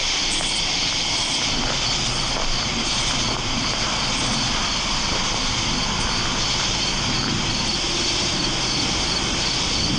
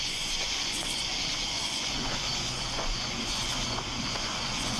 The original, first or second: first